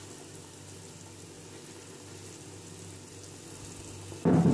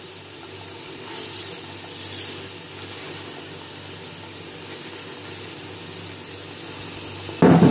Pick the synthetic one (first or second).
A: second